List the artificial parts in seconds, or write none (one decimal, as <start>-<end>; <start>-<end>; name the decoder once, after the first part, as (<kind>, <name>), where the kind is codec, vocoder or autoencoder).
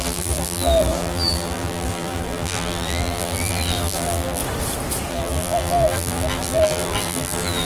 0.0-4.4 (vocoder, BigVGAN v2); 5.1-7.6